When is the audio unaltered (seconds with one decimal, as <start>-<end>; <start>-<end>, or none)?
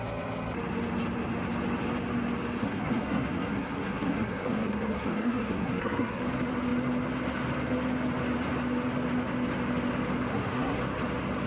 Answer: 0.0-2.6; 6.2-10.3; 10.8-11.5